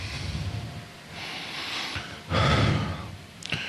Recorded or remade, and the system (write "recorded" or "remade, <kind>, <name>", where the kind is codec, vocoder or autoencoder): recorded